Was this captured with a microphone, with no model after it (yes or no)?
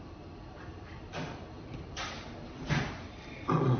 no